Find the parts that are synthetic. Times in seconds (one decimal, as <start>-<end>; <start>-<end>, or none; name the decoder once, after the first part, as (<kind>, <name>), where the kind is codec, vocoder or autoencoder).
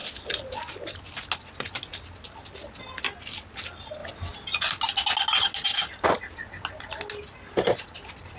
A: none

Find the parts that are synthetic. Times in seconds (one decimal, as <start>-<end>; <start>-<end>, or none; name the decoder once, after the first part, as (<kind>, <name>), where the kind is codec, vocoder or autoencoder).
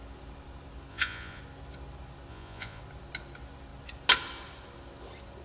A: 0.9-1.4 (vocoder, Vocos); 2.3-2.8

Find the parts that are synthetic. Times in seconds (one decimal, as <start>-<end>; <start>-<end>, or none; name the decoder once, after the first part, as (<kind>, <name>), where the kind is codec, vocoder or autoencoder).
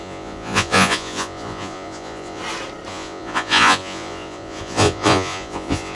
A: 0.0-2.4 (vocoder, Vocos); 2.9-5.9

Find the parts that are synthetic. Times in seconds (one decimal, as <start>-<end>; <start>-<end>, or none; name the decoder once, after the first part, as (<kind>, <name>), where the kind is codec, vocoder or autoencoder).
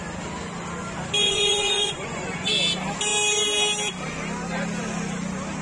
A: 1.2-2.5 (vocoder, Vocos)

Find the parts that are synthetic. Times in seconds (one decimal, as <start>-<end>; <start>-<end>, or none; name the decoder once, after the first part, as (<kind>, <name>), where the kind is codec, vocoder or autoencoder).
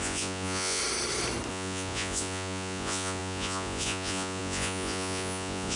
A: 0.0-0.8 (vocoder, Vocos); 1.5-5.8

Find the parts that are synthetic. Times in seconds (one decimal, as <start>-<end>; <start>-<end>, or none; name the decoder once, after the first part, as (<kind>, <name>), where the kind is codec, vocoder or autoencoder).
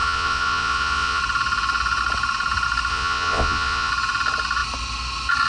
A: 0.0-1.2 (vocoder, Vocos); 2.9-3.9